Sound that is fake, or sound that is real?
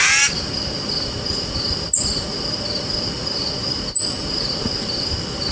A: real